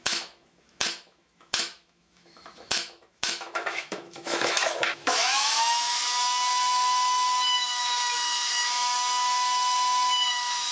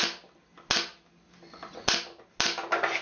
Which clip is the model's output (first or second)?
first